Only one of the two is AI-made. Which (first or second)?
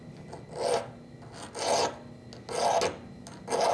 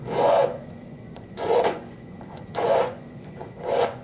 second